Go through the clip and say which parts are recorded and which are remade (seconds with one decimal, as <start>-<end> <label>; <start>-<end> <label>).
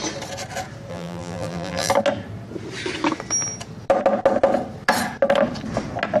0.0-0.9 recorded; 0.9-1.9 remade; 1.9-6.2 recorded